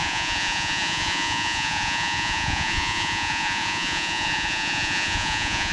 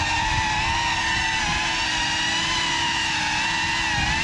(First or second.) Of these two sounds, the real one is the second